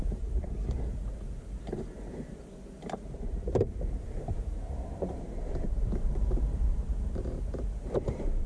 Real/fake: fake